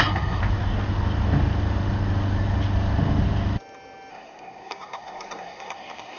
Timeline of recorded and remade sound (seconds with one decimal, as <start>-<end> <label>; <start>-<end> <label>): 0.0-0.4 remade; 0.4-4.1 recorded; 4.1-6.2 remade